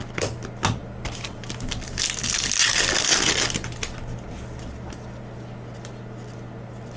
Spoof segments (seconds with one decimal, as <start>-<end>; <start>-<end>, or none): none